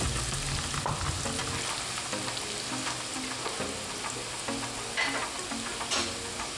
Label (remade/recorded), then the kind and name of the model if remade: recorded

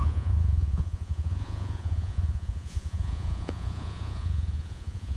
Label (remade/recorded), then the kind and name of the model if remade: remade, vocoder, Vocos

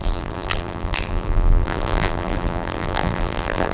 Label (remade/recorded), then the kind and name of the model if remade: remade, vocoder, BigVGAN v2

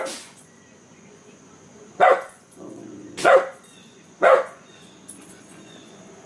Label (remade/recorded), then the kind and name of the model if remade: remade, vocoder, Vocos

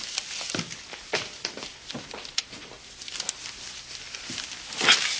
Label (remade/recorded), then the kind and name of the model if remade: recorded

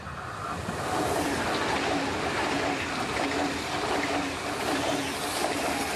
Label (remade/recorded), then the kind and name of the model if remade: recorded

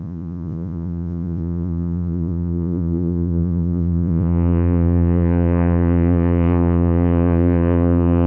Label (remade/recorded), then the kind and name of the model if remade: remade, vocoder, Vocos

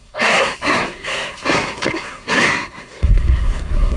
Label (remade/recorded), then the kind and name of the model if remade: remade, codec, SNAC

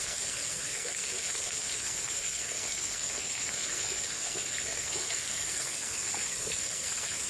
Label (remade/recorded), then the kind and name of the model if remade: remade, codec, SNAC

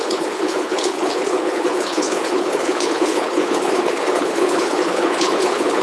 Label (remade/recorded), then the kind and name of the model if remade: remade, codec, HILCodec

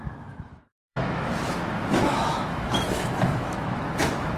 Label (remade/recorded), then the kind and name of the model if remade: remade, autoencoder, DAC-VAE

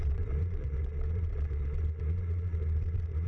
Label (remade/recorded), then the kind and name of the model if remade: remade, vocoder, Vocos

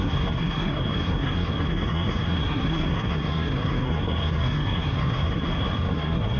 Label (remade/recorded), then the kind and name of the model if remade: remade, codec, SNAC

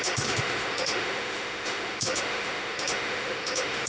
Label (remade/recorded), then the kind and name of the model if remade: remade, autoencoder, DAC-VAE